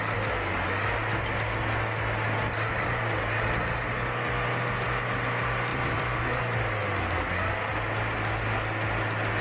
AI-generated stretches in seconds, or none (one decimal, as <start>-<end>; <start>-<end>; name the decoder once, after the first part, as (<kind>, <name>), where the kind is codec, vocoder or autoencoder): 5.7-6.2 (vocoder, BigVGAN v2)